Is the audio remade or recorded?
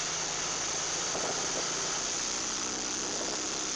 recorded